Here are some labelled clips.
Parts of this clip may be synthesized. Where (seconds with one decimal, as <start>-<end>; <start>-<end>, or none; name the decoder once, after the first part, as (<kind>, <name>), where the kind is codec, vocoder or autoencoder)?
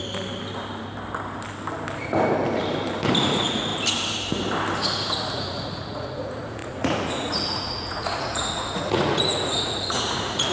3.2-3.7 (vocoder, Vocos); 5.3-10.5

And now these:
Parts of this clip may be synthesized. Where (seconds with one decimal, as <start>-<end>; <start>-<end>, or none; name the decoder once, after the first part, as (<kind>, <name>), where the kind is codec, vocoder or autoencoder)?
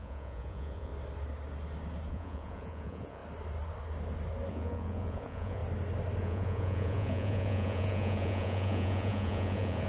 0.0-0.9 (vocoder, Vocos); 2.1-3.2; 4.5-5.6; 6.2-9.9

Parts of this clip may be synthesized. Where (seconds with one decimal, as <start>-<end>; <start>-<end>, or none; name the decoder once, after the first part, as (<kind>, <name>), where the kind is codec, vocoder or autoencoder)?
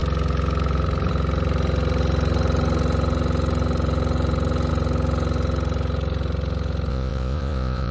6.9-7.9 (vocoder, Vocos)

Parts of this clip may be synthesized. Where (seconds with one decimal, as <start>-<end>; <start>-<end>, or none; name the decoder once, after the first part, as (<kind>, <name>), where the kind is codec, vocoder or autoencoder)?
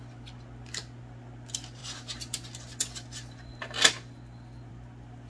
none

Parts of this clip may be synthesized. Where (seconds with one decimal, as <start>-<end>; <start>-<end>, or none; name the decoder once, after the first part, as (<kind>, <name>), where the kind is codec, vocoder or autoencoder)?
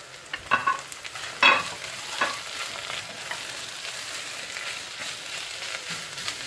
none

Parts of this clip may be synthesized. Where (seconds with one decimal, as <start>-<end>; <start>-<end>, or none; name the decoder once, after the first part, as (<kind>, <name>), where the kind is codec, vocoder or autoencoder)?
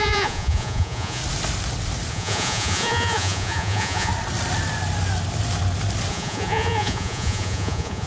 0.0-1.2 (vocoder, Vocos); 2.1-4.1; 6.1-8.1